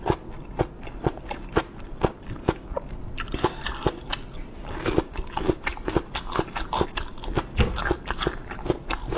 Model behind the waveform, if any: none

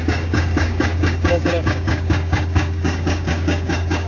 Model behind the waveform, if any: codec, DAC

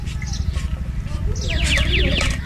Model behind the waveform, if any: none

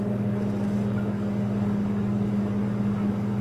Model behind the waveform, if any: codec, DAC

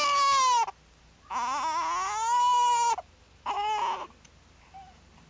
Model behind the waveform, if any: none